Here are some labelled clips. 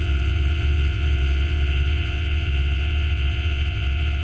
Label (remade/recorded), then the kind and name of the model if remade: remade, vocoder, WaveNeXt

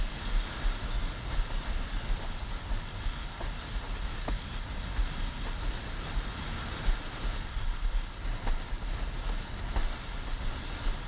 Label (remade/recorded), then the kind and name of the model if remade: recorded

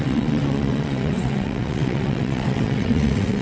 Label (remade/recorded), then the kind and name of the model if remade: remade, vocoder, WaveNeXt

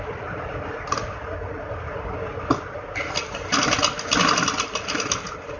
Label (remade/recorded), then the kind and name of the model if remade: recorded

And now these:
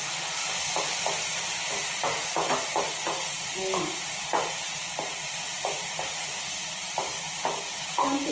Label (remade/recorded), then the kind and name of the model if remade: recorded